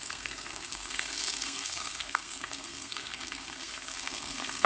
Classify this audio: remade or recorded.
remade